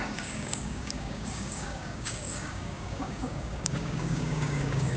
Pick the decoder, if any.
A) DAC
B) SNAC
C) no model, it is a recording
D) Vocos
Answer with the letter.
A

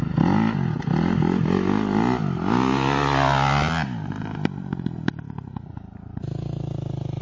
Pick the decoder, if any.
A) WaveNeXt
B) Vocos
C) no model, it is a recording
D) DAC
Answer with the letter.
C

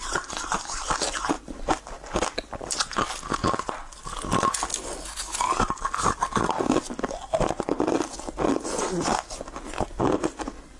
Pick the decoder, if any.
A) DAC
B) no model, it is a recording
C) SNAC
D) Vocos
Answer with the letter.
B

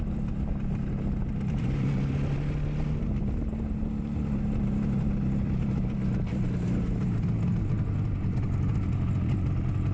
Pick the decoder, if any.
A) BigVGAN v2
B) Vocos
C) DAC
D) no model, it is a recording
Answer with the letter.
D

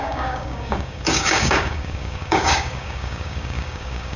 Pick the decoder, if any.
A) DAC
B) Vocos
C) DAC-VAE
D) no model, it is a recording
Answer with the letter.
A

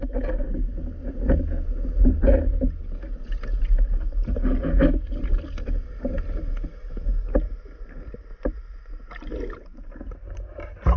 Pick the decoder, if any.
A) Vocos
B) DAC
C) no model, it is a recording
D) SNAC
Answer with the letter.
C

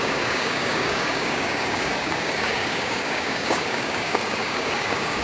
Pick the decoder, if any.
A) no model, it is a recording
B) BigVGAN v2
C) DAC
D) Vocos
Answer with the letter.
C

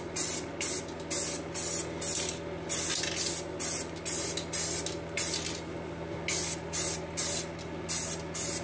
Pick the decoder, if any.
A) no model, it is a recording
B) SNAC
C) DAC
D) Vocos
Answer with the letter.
A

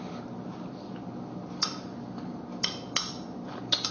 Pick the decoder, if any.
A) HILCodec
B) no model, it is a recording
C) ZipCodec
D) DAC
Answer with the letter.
B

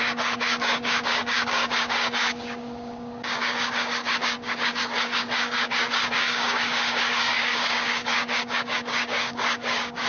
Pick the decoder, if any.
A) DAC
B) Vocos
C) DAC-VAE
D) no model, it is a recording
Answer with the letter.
A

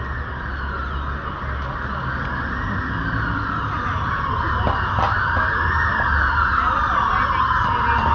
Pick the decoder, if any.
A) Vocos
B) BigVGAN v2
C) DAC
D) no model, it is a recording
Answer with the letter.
D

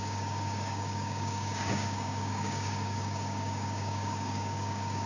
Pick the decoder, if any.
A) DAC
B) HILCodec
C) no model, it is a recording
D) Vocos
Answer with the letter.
A